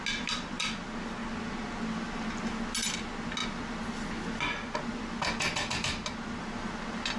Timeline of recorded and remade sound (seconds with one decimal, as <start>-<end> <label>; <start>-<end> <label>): 0.0-7.2 recorded

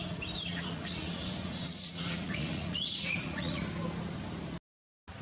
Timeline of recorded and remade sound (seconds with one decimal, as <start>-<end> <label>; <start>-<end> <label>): 0.0-0.5 recorded; 0.5-3.6 remade; 3.6-5.2 recorded